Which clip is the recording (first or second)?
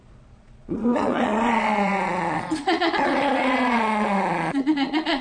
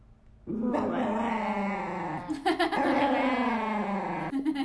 second